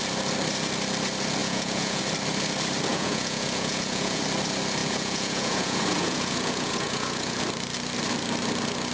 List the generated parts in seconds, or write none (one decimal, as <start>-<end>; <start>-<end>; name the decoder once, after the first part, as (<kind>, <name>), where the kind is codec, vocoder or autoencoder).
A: 1.4-2.0 (vocoder, Vocos); 2.9-4.2; 4.8-7.4